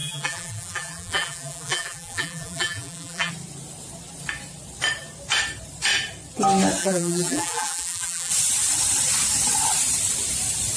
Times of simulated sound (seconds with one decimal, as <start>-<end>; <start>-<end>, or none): 0.0-3.3; 6.8-8.3